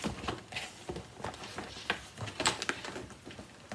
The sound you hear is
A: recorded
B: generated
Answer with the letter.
A